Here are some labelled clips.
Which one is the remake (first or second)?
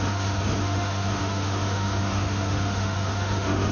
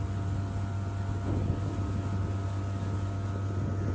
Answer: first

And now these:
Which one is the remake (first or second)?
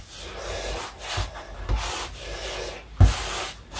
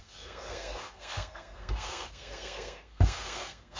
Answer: second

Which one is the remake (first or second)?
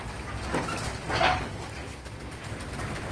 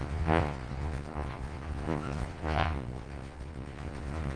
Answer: second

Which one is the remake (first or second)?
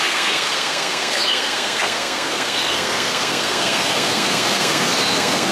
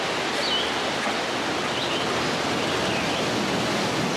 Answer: first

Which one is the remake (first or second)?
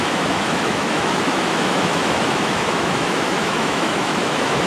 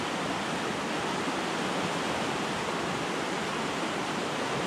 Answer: first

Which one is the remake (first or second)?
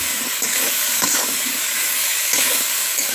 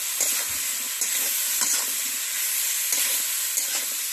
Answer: first